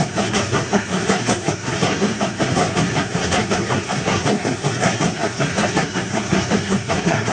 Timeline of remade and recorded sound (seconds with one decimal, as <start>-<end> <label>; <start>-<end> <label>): 0.0-7.3 remade